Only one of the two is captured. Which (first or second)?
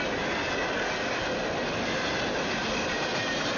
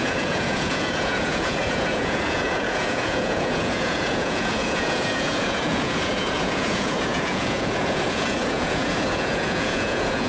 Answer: first